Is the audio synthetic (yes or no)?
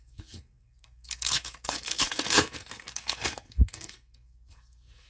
yes